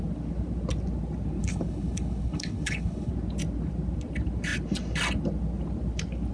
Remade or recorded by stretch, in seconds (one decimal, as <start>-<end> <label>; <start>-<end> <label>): 0.0-1.4 recorded; 1.4-3.1 remade; 3.1-6.3 recorded